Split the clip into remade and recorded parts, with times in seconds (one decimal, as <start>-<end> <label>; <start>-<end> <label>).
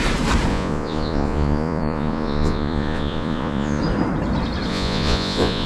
0.0-0.5 recorded; 0.5-3.8 remade; 3.8-4.7 recorded; 4.7-5.7 remade